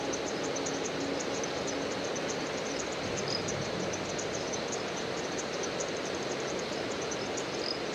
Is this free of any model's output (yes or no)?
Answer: yes